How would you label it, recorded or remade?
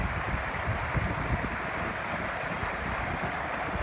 recorded